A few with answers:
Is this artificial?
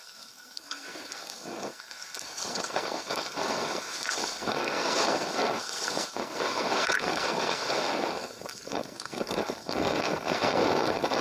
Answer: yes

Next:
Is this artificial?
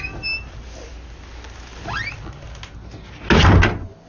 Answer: no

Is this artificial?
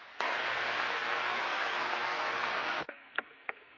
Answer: yes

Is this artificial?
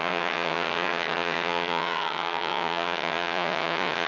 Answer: yes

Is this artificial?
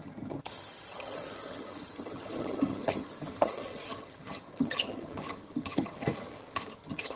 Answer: yes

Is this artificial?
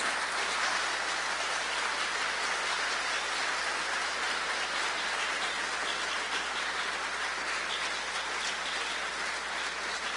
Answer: no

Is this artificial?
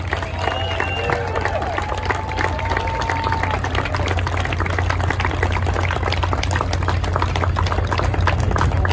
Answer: no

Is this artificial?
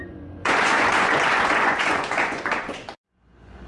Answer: yes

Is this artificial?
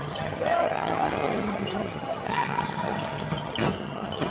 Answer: yes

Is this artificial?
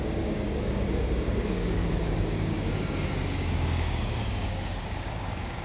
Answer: yes